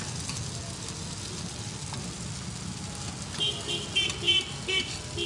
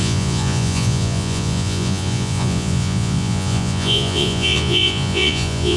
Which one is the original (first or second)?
first